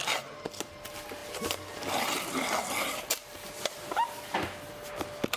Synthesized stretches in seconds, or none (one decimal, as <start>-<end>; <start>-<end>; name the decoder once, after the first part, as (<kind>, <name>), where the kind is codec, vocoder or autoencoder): none